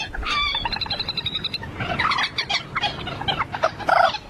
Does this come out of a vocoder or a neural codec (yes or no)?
no